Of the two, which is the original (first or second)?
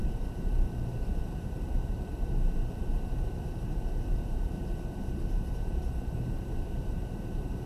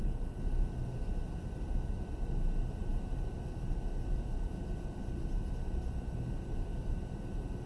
second